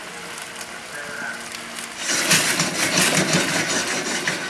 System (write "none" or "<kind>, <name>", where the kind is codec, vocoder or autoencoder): none